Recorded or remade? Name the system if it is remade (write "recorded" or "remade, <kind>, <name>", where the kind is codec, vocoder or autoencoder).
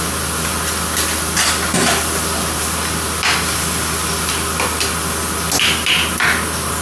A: recorded